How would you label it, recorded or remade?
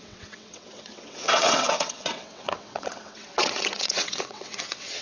remade